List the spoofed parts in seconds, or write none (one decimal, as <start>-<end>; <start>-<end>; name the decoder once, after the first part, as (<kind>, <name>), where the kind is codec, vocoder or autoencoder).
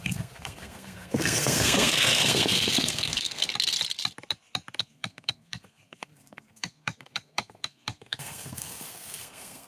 0.0-3.5 (codec, SNAC); 4.8-9.7